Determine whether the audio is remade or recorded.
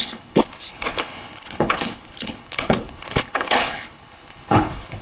remade